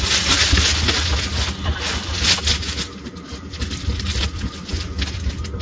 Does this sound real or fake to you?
real